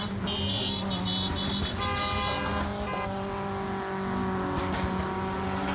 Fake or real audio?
real